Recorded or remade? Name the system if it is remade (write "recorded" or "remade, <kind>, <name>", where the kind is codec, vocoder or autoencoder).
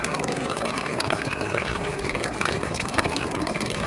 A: remade, codec, SNAC